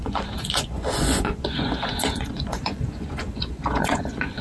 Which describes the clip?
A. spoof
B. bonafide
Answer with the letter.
A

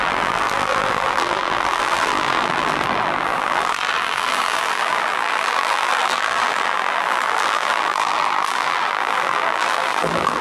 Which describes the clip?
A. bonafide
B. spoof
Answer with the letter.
B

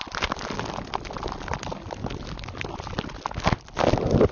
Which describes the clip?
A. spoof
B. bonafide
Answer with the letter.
B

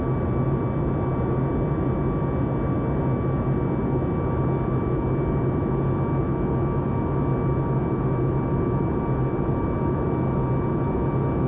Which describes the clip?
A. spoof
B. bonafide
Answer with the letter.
B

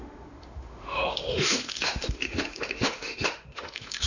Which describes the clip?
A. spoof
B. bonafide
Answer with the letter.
A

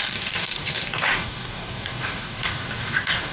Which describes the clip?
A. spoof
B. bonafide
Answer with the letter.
A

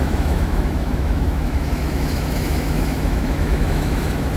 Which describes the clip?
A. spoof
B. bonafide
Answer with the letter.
A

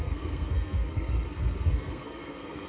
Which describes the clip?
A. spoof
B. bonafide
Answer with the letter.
A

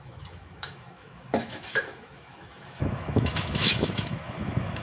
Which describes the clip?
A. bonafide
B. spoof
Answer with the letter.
B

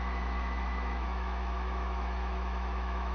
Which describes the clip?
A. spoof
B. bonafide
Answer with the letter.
A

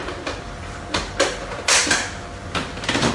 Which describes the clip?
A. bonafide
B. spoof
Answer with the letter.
A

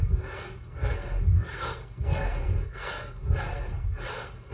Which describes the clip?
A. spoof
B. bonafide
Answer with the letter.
A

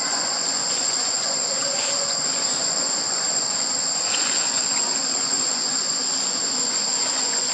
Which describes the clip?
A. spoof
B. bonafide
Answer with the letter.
A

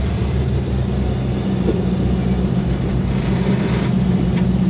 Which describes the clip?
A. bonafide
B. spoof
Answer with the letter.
A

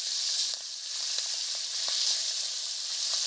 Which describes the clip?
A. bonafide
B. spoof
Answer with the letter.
A